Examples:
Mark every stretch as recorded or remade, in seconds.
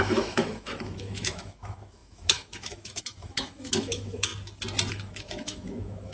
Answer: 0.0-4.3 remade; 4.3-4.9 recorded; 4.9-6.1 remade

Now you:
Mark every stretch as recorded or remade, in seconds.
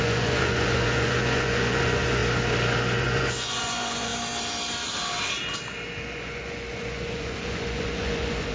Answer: 0.0-2.2 remade; 2.2-3.0 recorded; 3.0-4.1 remade; 4.1-6.0 recorded; 6.0-8.5 remade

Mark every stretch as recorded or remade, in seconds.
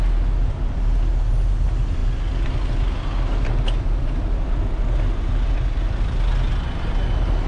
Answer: 0.0-7.5 recorded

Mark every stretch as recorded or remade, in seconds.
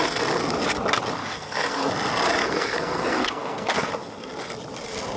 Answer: 0.0-1.2 recorded; 1.2-1.9 remade; 1.9-2.4 recorded; 2.4-3.9 remade; 3.9-5.2 recorded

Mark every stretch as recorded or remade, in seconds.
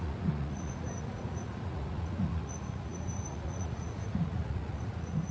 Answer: 0.0-5.3 remade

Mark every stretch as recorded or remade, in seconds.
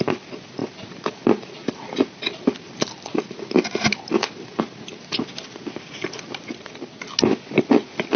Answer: 0.0-8.2 recorded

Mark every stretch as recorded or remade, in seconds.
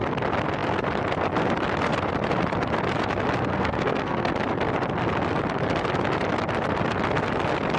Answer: 0.0-3.5 recorded; 3.5-4.3 remade; 4.3-7.8 recorded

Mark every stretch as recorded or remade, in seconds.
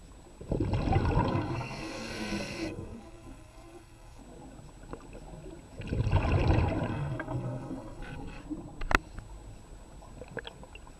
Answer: 0.0-1.3 recorded; 1.3-4.2 remade; 4.2-6.9 recorded; 6.9-8.4 remade; 8.4-11.0 recorded